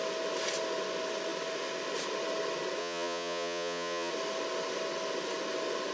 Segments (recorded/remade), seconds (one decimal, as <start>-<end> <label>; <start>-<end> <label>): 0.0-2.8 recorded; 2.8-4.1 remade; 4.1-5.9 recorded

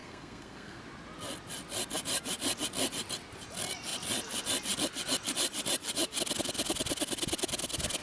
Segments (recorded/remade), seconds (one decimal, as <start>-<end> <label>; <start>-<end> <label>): 0.0-0.8 remade; 0.8-8.0 recorded

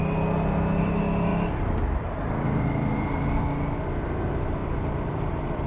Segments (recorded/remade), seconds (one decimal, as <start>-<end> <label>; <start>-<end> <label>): 0.0-1.3 recorded; 1.3-3.2 remade; 3.2-4.6 recorded; 4.6-5.7 remade

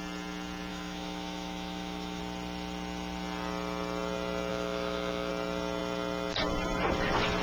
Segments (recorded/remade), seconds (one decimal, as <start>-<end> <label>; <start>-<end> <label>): 0.0-0.7 recorded; 0.7-2.2 remade; 2.2-4.5 recorded; 4.5-5.3 remade; 5.3-7.4 recorded

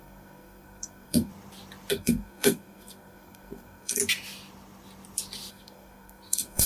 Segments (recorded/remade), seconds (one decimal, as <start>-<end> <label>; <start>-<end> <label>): 0.0-1.3 remade; 1.3-1.9 recorded; 1.9-4.0 remade; 4.0-5.5 recorded; 5.5-6.7 remade